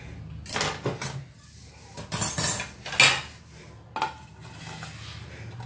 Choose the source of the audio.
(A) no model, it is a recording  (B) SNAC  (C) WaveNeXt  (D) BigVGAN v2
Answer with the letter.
A